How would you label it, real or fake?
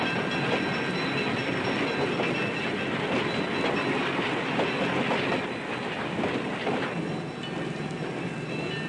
real